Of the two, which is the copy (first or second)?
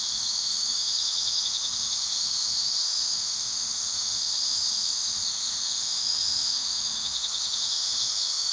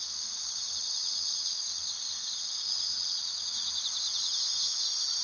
first